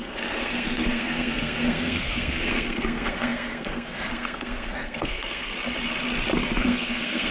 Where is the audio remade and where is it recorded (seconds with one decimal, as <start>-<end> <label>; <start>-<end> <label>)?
0.0-5.5 remade; 5.5-6.6 recorded; 6.6-7.3 remade